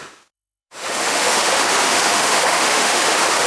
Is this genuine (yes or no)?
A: no